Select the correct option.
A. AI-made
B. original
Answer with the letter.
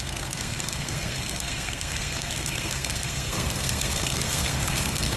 A